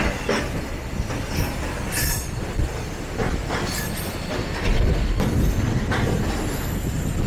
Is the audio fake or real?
real